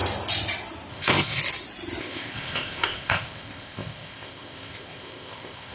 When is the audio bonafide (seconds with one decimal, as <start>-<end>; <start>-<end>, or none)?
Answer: 0.0-0.9; 1.4-2.0